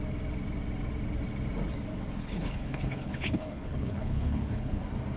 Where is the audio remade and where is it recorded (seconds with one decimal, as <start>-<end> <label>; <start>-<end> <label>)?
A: 0.0-2.2 recorded; 2.2-4.8 remade; 4.8-5.2 recorded